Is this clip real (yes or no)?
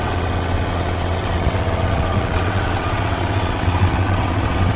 no